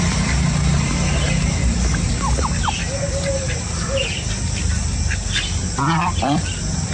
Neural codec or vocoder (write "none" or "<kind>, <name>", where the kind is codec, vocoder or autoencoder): none